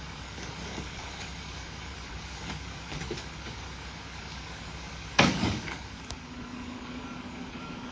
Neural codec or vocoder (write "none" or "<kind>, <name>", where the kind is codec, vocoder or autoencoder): codec, DAC